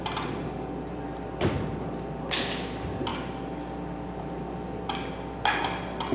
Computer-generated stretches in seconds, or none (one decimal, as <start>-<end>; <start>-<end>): none

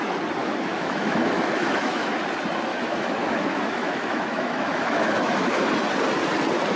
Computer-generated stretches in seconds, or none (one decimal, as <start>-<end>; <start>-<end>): 0.4-2.1; 2.7-5.6

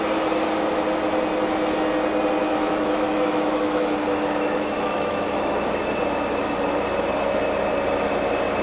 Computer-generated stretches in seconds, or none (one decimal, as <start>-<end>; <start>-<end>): 2.4-5.8

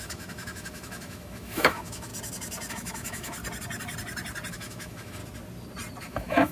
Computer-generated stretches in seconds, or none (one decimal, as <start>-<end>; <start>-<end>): 0.0-2.1; 2.7-3.4; 4.5-5.2; 6.0-6.5

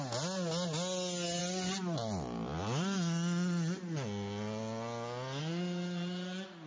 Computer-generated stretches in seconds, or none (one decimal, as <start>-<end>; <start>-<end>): none